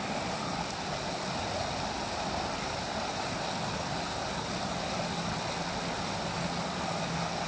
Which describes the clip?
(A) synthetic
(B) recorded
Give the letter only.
B